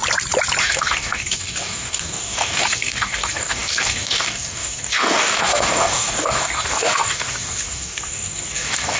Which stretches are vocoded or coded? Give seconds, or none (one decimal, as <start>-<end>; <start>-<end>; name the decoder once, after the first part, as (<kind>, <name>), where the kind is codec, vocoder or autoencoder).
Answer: 0.6-9.0 (codec, DAC)